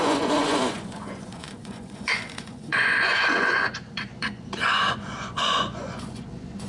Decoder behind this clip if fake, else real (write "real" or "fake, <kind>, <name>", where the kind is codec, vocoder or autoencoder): fake, vocoder, Vocos